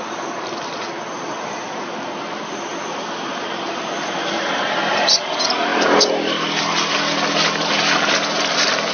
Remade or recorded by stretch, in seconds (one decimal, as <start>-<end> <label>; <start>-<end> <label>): 0.0-2.7 recorded; 2.7-4.9 remade; 4.9-8.9 recorded